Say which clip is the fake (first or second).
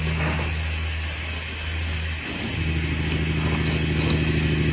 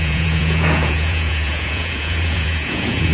second